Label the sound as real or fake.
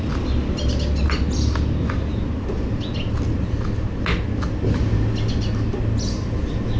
real